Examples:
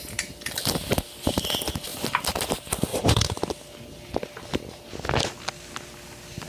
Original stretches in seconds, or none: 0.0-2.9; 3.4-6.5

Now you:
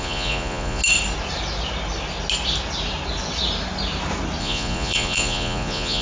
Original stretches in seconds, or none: 0.8-4.4